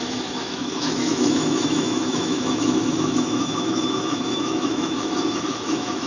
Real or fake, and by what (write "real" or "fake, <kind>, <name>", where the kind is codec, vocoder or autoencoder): fake, autoencoder, DAC-VAE